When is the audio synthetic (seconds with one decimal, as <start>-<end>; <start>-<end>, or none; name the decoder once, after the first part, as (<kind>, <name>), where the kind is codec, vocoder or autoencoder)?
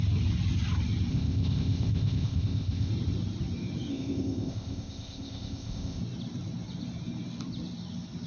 1.1-2.9 (codec, ZipCodec); 3.9-6.0